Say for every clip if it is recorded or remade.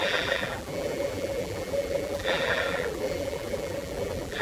remade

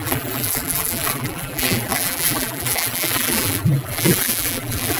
remade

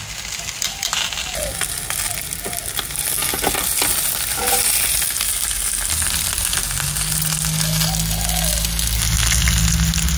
recorded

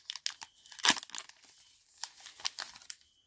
recorded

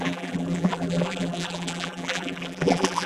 remade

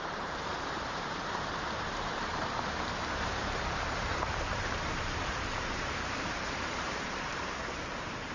remade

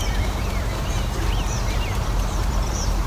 remade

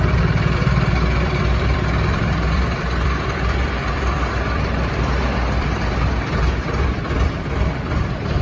remade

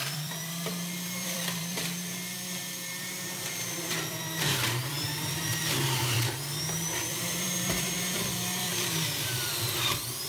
remade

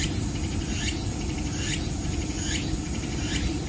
recorded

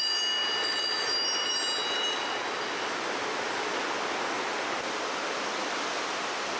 recorded